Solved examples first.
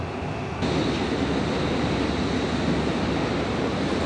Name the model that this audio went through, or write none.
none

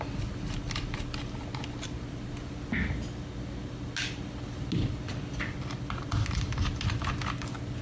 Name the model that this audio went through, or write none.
none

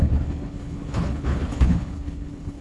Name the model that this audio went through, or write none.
codec, HILCodec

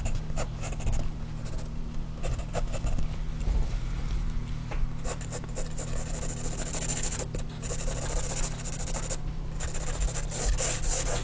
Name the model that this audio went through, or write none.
vocoder, BigVGAN v2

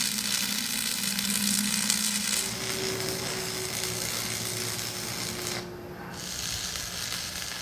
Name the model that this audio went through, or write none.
none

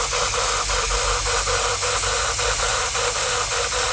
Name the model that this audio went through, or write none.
none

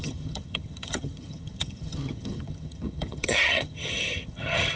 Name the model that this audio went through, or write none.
vocoder, HiFi-GAN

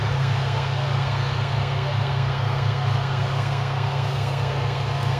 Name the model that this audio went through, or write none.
codec, SNAC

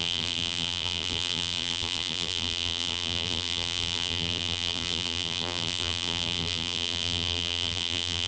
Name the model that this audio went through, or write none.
vocoder, BigVGAN v2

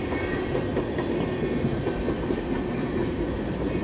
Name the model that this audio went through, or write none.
none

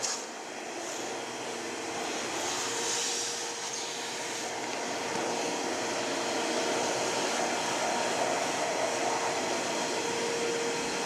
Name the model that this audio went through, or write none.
none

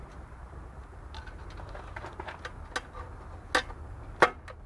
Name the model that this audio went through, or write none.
none